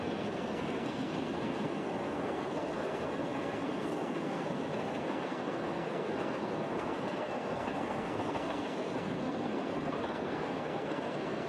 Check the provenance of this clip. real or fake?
fake